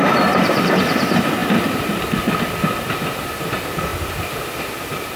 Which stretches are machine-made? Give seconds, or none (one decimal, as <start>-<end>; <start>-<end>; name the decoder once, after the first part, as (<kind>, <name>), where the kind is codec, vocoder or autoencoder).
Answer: 0.0-3.9 (vocoder, BigVGAN v2); 4.6-5.2